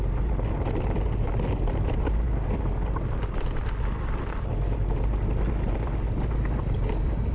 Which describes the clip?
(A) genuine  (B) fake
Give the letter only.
A